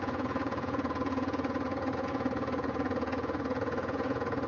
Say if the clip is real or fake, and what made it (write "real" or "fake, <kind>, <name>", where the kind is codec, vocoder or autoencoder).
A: fake, vocoder, Vocos